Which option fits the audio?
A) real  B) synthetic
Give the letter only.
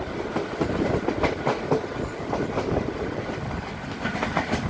A